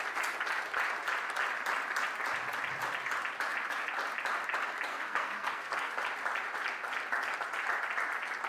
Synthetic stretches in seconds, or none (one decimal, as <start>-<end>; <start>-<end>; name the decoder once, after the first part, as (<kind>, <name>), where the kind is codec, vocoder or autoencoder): 4.9-5.9 (codec, SNAC)